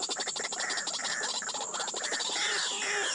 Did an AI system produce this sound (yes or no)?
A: no